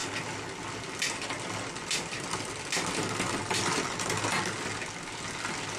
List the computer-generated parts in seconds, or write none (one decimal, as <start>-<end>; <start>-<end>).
none